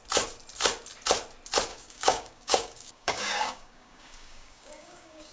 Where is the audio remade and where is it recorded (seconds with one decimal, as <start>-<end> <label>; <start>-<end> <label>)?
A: 0.0-1.7 recorded; 1.7-5.3 remade

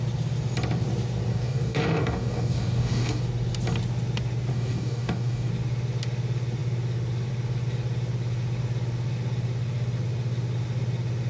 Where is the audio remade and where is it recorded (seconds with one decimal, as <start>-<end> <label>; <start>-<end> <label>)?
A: 0.0-1.3 recorded; 1.3-3.2 remade; 3.2-4.5 recorded; 4.5-5.5 remade; 5.5-11.3 recorded

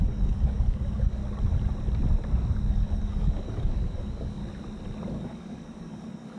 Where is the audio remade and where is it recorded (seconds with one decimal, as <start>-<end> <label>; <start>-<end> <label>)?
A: 0.0-1.2 remade; 1.2-2.7 recorded; 2.7-4.4 remade; 4.4-5.1 recorded; 5.1-6.4 remade

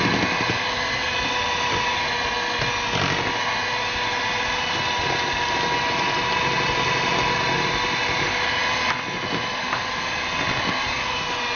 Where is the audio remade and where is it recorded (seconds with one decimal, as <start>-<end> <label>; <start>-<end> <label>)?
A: 0.0-11.6 recorded